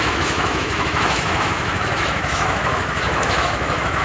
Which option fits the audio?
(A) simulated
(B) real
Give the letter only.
A